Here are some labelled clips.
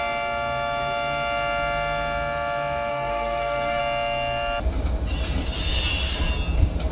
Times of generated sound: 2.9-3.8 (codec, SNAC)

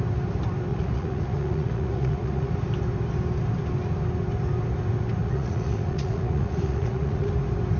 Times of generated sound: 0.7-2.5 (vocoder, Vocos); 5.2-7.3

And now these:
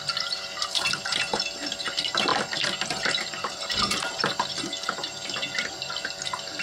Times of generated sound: 0.0-2.3 (vocoder, BigVGAN v2); 3.2-6.6